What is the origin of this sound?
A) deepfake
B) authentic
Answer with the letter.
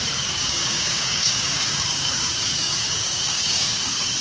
A